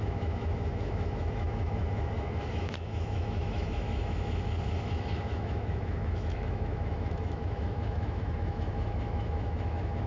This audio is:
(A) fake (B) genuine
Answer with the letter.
A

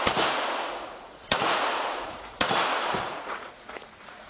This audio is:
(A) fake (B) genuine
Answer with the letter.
A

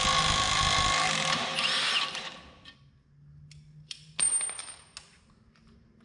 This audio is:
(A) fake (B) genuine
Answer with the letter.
B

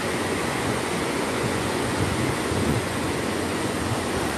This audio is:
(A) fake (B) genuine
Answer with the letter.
A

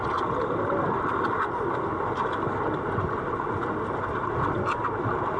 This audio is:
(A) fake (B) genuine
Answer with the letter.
B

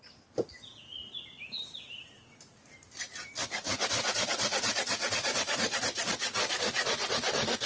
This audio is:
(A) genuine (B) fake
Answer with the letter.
A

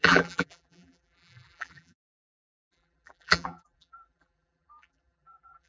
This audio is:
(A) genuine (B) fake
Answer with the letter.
B